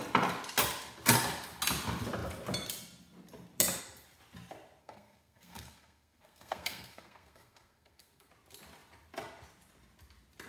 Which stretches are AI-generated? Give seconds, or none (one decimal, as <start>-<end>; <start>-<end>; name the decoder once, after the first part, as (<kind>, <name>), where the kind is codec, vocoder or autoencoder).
4.8-8.3 (codec, SNAC)